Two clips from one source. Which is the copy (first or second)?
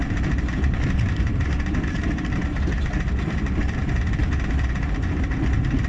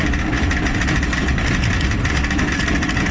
first